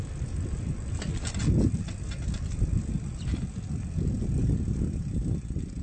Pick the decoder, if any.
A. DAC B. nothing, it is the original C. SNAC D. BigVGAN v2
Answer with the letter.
B